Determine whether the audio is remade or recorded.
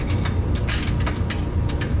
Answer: recorded